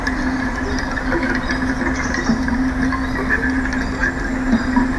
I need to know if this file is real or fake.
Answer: real